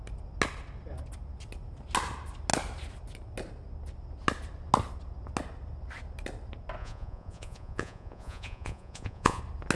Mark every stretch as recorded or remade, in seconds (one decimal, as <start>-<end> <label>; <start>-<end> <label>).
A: 0.0-6.8 recorded; 6.8-9.4 remade; 9.4-9.8 recorded